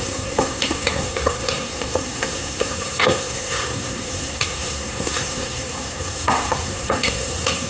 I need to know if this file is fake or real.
fake